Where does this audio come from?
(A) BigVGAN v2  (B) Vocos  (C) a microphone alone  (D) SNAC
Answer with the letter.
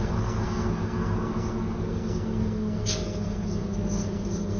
D